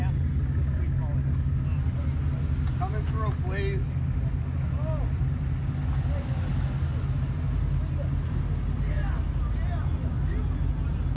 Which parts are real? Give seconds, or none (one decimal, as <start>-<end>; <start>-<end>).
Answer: 0.0-11.2